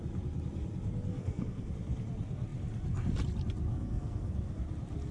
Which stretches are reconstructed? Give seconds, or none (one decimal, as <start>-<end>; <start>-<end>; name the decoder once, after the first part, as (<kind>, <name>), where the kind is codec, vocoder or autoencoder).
1.1-1.7 (codec, SNAC); 3.7-4.6